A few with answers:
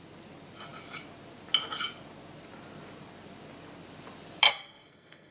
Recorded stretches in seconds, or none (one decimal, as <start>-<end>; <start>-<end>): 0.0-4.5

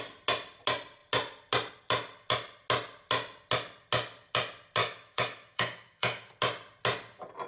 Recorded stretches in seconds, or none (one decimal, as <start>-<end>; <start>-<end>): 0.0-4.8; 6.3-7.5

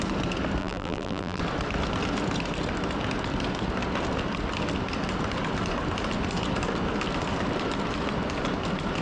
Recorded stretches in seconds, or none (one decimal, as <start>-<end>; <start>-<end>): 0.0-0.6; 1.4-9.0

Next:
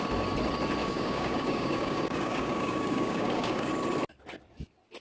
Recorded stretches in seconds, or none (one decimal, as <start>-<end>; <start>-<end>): 0.0-0.8; 3.7-5.0

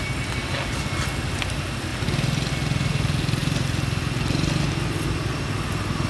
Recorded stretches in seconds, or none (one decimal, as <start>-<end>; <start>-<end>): 0.0-6.1